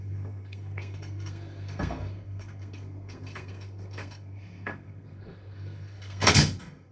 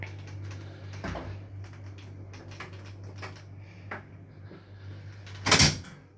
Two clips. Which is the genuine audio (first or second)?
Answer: second